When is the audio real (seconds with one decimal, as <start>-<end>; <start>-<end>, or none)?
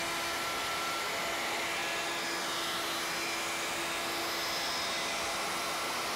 0.0-6.2